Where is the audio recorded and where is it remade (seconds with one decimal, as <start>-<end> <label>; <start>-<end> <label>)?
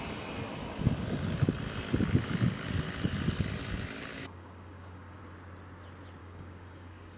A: 0.0-4.1 recorded; 4.1-5.2 remade; 5.2-6.2 recorded; 6.2-7.2 remade